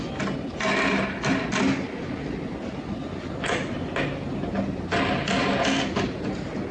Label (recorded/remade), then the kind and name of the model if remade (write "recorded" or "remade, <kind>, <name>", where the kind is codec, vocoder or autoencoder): recorded